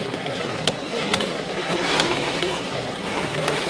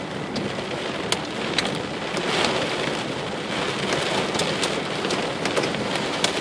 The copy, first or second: first